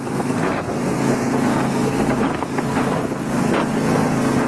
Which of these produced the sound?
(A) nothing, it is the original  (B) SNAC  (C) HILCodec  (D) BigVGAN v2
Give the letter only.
B